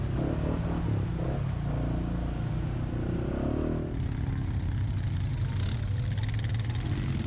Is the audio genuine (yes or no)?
yes